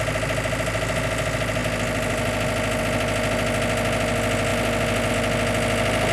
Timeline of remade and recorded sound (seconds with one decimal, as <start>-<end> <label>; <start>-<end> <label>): 0.0-6.1 recorded